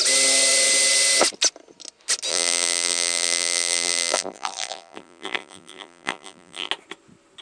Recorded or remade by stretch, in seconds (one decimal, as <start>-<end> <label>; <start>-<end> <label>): 0.0-2.3 recorded; 2.3-6.7 remade; 6.7-7.4 recorded